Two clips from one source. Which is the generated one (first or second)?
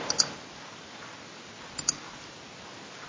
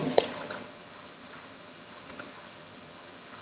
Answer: second